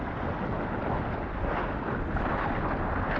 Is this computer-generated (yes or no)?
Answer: no